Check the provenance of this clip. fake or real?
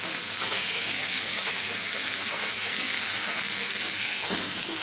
fake